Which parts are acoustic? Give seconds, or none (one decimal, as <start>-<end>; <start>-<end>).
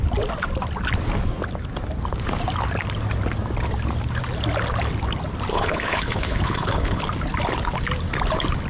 0.0-5.5; 7.0-8.7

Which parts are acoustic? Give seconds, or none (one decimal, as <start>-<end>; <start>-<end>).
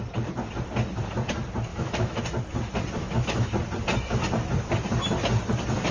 0.0-1.7; 2.2-3.0; 3.5-5.9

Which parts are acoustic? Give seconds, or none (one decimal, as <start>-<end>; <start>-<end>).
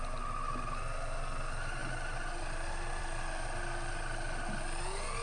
0.0-5.2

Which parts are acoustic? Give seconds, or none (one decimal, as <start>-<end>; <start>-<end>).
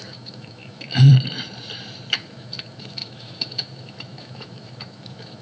1.1-2.1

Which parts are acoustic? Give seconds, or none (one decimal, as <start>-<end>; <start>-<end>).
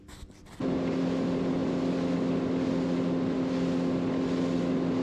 0.0-5.0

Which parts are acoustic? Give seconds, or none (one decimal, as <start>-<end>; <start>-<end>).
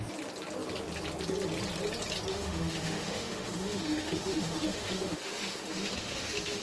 0.0-2.3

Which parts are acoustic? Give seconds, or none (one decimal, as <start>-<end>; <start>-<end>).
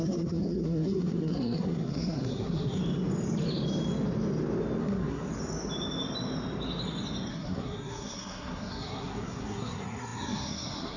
2.8-4.8; 5.3-7.3